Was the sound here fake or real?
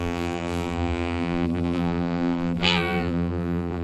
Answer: fake